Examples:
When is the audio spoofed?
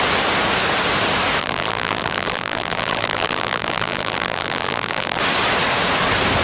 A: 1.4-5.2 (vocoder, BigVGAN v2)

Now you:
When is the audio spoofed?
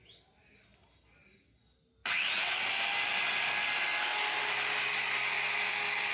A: 2.0-2.5 (vocoder, BigVGAN v2)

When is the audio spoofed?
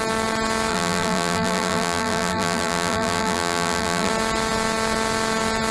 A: 0.7-4.1 (vocoder, BigVGAN v2)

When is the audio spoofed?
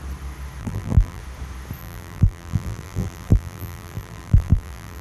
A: 0.6-1.2 (vocoder, BigVGAN v2); 1.8-5.0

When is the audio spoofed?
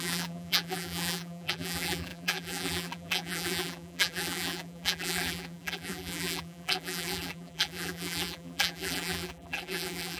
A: 0.0-10.2 (vocoder, BigVGAN v2)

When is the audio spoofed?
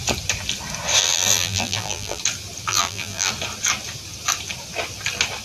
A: 1.0-2.2 (vocoder, BigVGAN v2); 2.7-3.3